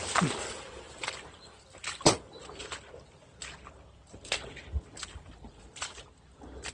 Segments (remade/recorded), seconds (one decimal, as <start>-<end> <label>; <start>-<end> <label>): 0.0-6.7 recorded